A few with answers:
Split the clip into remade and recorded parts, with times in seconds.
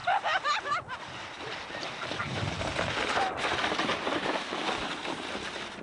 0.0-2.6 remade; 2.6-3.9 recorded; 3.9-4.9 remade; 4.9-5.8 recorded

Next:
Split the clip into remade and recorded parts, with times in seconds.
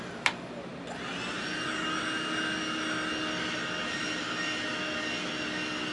0.0-5.9 recorded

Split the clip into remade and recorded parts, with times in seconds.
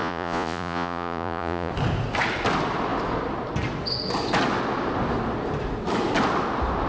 0.0-1.7 remade; 1.7-6.9 recorded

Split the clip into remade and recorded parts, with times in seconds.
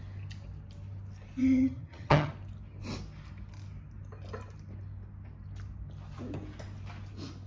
0.0-1.4 recorded; 1.4-2.3 remade; 2.3-7.5 recorded